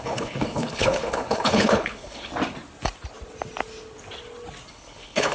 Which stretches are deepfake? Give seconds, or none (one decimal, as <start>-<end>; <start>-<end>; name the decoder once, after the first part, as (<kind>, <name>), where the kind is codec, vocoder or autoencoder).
0.0-2.3 (codec, HILCodec); 4.7-5.3